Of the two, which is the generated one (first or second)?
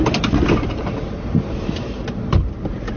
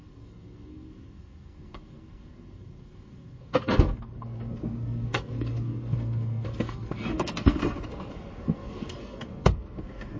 second